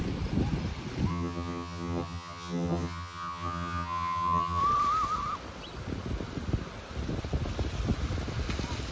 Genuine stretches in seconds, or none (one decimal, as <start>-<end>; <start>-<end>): 0.0-1.1; 4.6-8.9